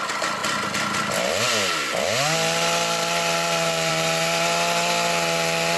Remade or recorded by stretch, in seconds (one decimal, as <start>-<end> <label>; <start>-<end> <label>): 0.0-5.8 recorded